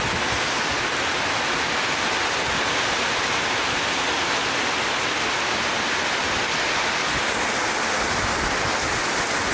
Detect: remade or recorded recorded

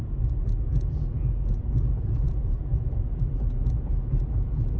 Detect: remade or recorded remade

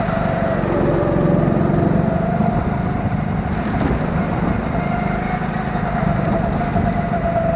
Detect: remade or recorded recorded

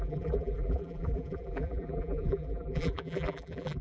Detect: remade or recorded remade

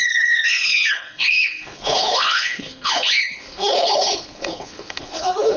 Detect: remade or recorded remade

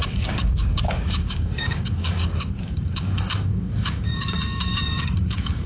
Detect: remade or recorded remade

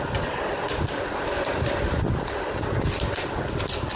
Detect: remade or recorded recorded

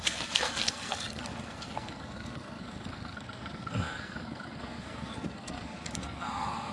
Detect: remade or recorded remade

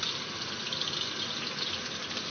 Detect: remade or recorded recorded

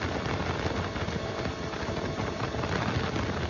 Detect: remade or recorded recorded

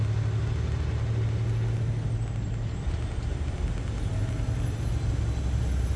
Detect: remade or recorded recorded